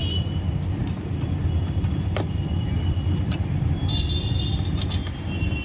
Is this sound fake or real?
real